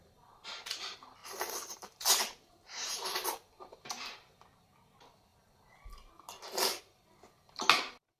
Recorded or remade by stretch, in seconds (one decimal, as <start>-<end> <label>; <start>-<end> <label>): 0.0-1.2 recorded; 1.2-3.5 remade; 3.5-8.2 recorded